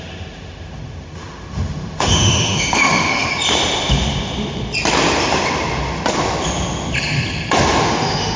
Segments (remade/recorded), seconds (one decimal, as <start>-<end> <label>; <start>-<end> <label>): 0.0-3.3 remade; 3.3-7.8 recorded; 7.8-8.4 remade